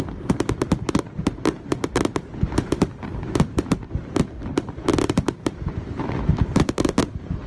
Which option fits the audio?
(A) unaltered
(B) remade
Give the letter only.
B